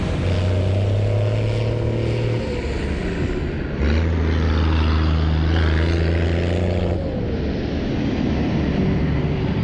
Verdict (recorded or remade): recorded